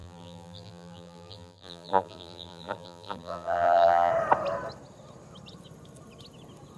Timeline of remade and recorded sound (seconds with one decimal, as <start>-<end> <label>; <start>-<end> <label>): 0.0-4.1 remade; 4.1-6.8 recorded